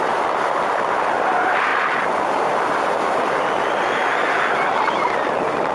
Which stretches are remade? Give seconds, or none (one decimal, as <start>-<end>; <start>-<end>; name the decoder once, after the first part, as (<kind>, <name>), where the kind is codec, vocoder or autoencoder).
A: none